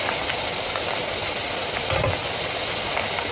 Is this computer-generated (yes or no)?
no